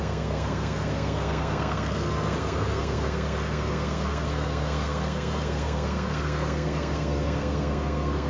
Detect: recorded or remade remade